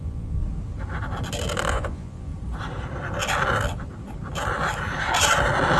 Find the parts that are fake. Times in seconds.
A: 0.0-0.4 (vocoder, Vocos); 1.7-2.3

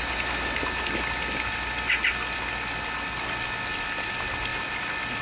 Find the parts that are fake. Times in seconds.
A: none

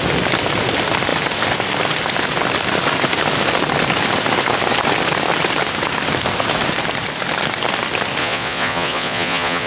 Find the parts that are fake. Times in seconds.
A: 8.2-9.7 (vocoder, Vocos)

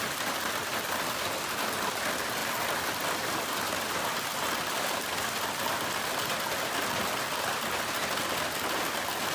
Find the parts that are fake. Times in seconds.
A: none